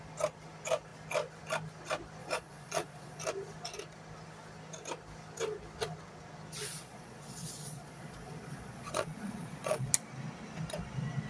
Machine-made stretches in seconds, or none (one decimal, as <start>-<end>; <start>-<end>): 2.2-3.2; 6.6-9.9